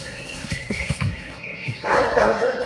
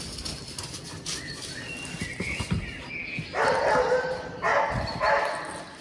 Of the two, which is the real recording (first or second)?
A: second